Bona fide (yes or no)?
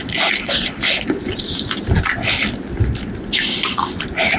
yes